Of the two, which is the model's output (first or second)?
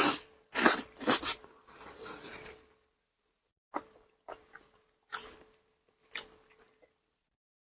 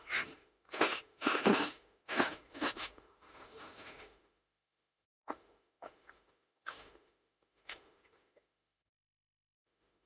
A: second